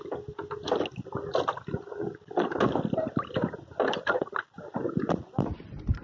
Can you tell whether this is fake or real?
real